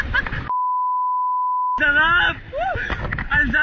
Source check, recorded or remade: recorded